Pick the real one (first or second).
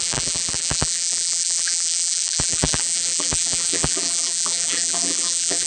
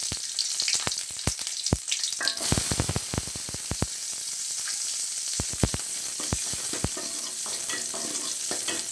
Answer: second